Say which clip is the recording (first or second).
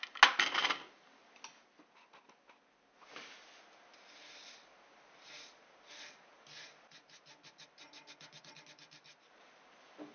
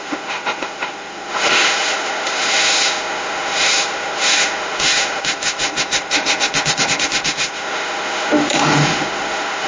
first